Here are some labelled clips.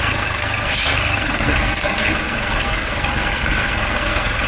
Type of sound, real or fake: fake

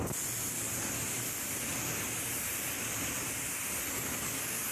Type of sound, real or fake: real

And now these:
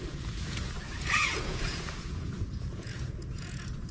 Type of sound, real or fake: fake